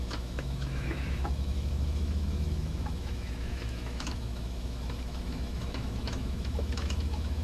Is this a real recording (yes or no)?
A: no